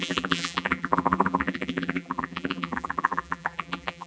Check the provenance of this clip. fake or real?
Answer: fake